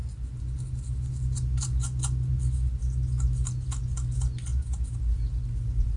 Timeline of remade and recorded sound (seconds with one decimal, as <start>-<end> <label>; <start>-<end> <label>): 0.0-6.0 recorded